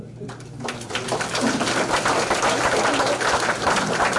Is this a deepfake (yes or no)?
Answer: no